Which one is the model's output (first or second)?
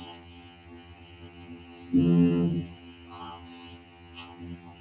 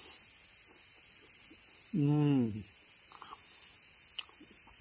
first